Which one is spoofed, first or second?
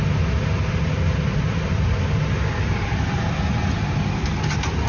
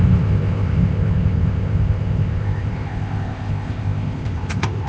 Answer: second